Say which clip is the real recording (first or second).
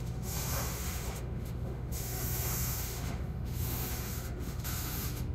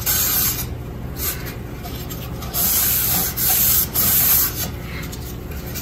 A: second